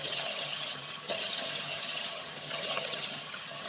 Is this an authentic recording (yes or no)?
no